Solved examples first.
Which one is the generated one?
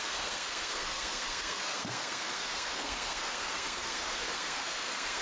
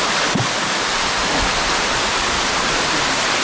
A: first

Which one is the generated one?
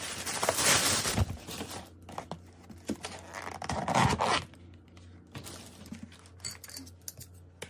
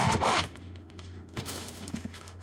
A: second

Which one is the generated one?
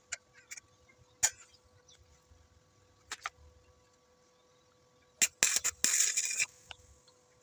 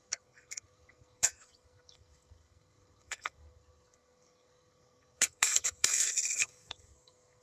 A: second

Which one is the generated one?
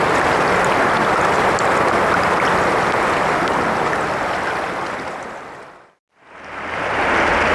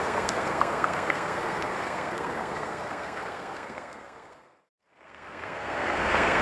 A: second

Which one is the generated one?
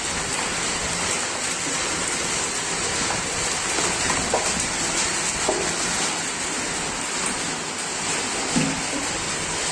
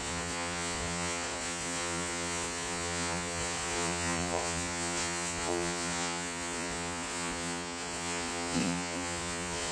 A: second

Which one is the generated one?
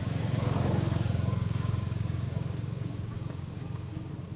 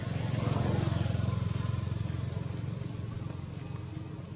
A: first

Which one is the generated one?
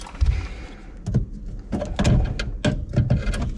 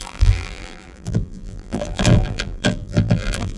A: second